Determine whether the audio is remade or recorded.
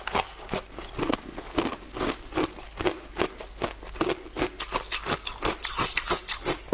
recorded